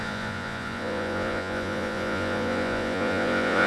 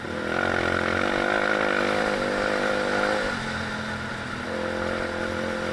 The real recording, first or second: second